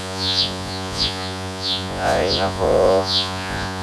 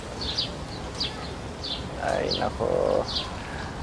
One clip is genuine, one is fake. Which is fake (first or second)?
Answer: first